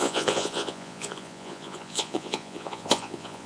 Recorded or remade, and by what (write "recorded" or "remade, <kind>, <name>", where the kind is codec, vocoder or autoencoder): remade, vocoder, Vocos